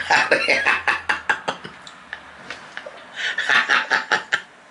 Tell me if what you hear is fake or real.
real